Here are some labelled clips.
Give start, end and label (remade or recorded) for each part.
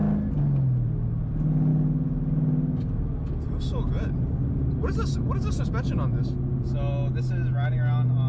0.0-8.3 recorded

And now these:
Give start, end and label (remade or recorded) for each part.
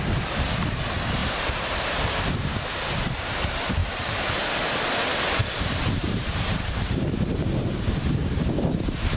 0.0-1.2 recorded; 1.2-2.6 remade; 2.6-3.8 recorded; 3.8-4.9 remade; 4.9-5.4 recorded; 5.4-9.2 remade